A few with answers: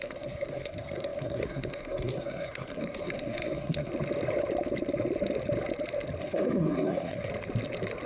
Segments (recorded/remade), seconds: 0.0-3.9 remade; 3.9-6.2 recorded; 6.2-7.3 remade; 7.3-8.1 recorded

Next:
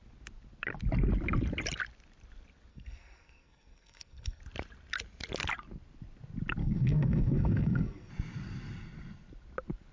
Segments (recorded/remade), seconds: 0.0-2.7 recorded; 2.7-4.4 remade; 4.4-6.6 recorded; 6.6-8.1 remade; 8.1-9.9 recorded